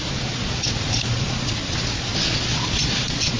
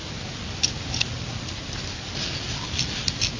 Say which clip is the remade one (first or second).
first